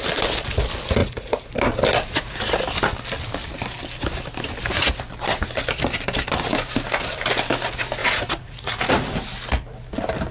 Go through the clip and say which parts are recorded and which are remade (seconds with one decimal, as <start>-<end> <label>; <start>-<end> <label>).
0.0-1.0 recorded; 1.0-1.5 remade; 1.5-8.0 recorded; 8.0-8.9 remade; 8.9-10.3 recorded